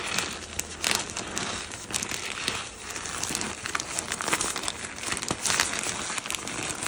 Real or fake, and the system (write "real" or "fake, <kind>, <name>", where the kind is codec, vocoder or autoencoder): real